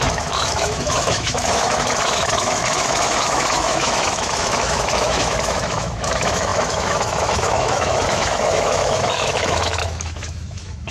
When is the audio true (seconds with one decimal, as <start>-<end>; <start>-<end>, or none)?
none